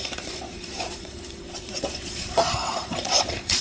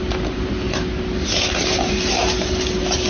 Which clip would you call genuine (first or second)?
second